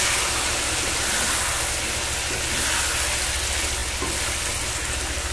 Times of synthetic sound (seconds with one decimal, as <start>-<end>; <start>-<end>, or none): none